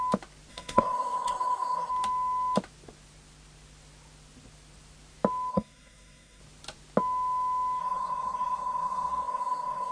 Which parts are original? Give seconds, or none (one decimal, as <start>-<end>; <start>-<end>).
0.0-0.5; 1.9-5.5; 6.4-7.8